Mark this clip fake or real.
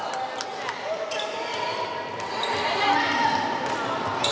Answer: real